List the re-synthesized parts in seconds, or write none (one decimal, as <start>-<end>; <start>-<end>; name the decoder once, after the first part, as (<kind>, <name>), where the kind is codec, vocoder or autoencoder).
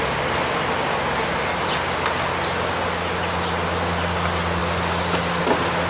none